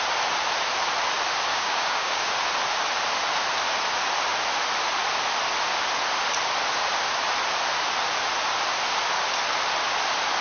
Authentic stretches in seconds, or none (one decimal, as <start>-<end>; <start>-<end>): 0.0-1.5; 2.3-10.4